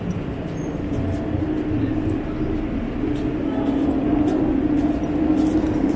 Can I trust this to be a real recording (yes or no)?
yes